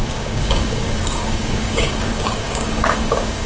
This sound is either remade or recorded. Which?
remade